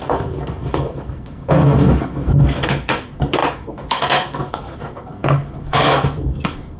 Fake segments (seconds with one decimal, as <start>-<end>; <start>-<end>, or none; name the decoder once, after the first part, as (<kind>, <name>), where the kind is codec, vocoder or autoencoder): 0.0-6.8 (codec, SNAC)